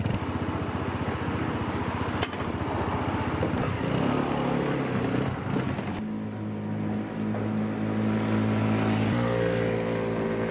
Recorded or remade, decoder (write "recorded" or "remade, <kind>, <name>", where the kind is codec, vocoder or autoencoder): recorded